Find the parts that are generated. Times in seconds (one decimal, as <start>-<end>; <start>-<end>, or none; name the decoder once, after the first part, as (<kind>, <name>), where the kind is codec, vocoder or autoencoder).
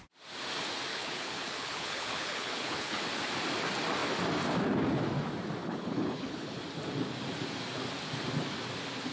0.9-3.0 (codec, HILCodec); 5.6-6.6